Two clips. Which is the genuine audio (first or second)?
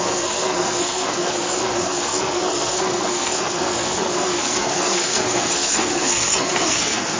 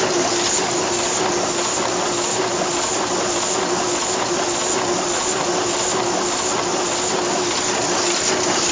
second